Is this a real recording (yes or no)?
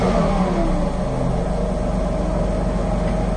yes